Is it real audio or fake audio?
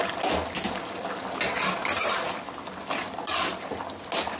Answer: real